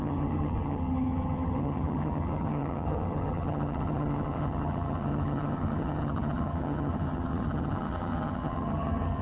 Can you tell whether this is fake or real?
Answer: fake